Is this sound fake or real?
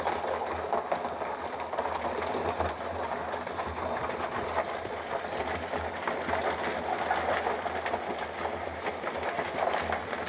real